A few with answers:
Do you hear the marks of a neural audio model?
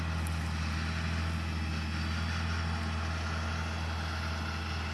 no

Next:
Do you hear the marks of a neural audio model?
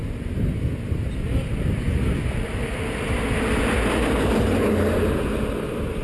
no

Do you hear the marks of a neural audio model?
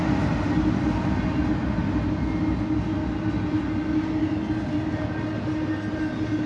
no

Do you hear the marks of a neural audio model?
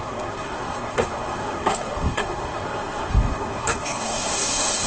yes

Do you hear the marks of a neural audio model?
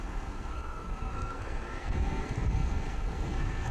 yes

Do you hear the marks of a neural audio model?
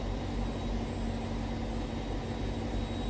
no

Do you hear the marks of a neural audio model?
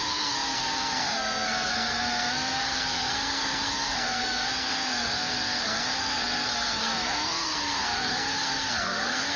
yes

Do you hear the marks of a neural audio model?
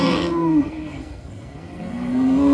yes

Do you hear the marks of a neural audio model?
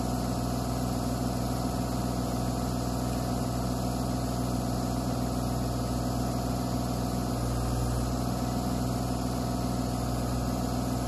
no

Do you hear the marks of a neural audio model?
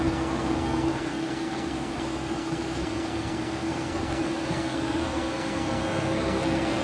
yes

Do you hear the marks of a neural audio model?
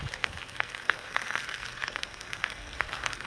yes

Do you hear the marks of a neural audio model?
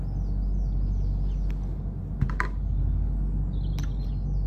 no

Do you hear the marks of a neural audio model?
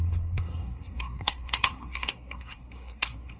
yes